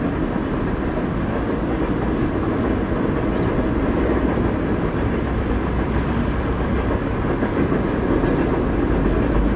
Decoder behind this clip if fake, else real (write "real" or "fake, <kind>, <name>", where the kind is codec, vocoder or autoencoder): real